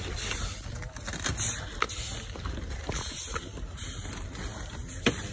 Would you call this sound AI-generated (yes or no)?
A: yes